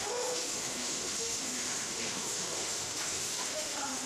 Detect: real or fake fake